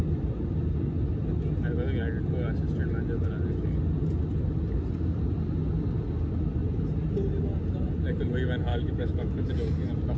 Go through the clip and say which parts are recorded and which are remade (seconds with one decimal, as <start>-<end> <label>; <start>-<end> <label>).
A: 0.0-8.7 recorded; 8.7-9.5 remade; 9.5-10.2 recorded